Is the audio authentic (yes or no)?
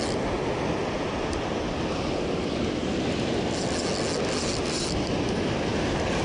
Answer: yes